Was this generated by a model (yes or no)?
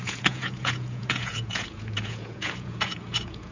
yes